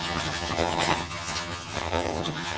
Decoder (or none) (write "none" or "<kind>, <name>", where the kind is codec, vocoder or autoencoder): vocoder, HiFi-GAN